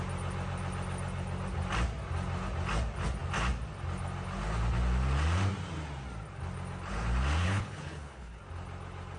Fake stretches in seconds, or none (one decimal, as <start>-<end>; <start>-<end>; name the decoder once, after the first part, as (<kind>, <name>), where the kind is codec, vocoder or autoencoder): 7.4-8.4 (codec, HILCodec)